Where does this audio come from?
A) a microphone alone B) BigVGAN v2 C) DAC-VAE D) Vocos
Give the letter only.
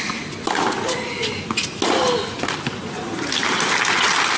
A